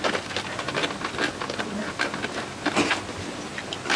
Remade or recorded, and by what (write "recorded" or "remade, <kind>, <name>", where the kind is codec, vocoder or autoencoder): recorded